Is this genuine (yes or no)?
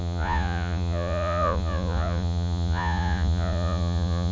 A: no